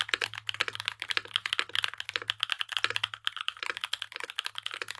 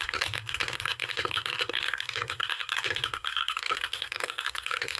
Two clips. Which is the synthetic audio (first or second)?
second